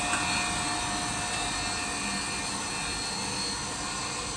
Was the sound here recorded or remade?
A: recorded